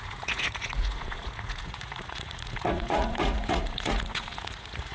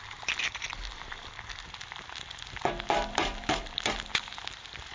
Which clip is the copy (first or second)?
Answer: first